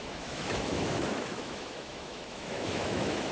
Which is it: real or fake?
fake